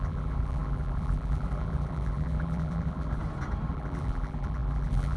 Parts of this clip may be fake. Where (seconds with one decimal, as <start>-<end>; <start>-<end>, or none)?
0.0-3.2; 3.7-5.2